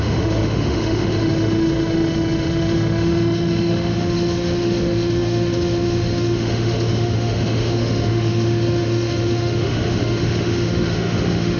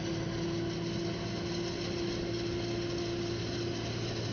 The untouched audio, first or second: second